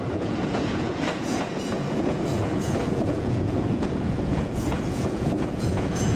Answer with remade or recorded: remade